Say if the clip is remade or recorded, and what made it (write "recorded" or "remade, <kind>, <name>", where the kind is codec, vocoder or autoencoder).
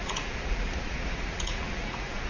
remade, vocoder, Vocos